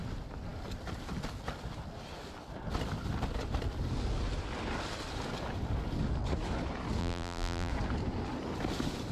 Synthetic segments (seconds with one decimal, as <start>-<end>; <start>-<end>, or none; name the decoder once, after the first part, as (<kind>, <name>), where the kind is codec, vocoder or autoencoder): 7.0-7.7 (vocoder, BigVGAN v2)